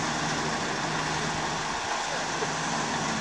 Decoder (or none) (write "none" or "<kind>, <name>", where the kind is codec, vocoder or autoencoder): none